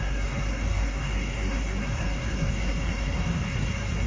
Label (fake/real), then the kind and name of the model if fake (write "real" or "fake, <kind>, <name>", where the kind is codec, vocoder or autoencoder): fake, codec, SNAC